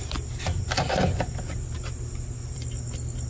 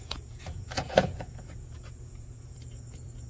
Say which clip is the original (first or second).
first